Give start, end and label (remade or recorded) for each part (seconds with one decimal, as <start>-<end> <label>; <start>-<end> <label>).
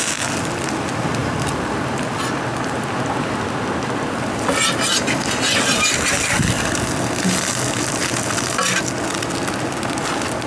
0.0-10.5 recorded